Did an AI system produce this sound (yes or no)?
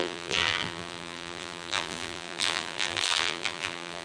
yes